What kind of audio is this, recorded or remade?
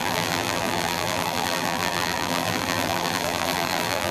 remade